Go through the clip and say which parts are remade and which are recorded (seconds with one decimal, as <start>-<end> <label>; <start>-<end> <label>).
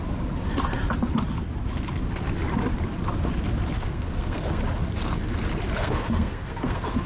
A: 0.0-3.8 recorded; 3.8-4.6 remade; 4.6-5.8 recorded; 5.8-7.1 remade